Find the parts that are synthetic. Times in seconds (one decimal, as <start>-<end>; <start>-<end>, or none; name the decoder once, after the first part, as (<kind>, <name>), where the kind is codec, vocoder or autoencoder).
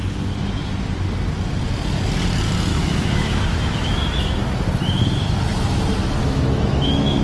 2.7-4.4 (autoencoder, DAC-VAE); 6.2-7.2